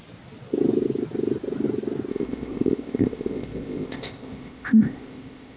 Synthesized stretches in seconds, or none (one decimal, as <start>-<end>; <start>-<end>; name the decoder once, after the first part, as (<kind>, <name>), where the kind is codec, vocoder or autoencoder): 2.1-5.6 (codec, ZipCodec)